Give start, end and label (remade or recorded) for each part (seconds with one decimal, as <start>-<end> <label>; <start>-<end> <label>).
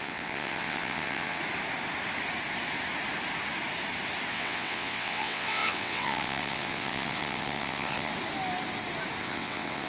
0.0-1.4 remade; 1.4-4.3 recorded; 4.3-8.1 remade; 8.1-9.2 recorded; 9.2-9.9 remade